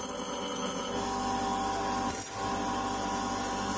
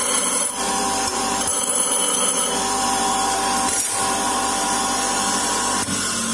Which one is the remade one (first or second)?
second